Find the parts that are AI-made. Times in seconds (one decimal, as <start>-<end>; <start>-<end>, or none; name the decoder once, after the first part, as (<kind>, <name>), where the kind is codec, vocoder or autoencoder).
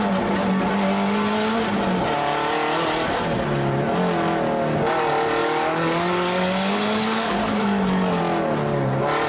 5.4-8.2 (codec, DAC)